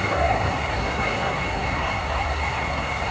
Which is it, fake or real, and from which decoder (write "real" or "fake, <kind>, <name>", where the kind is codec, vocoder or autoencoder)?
fake, codec, SNAC